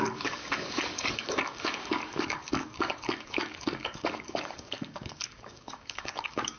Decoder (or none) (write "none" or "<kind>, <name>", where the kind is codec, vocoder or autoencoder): codec, DAC